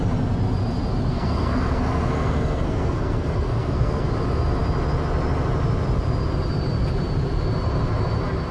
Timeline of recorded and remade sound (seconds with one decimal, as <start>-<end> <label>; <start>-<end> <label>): 0.0-1.1 recorded; 1.1-4.1 remade; 4.1-8.5 recorded